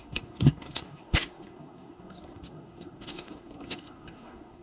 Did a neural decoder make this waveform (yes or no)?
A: yes